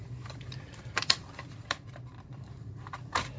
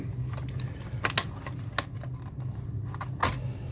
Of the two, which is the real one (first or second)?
second